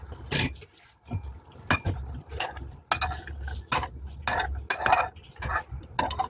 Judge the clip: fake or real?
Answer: real